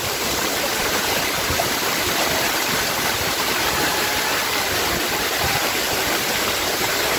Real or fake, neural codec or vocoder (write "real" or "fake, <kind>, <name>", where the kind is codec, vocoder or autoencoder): fake, vocoder, BigVGAN v2